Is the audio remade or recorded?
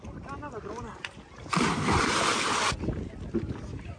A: recorded